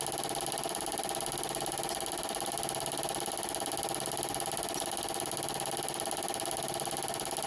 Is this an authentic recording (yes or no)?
yes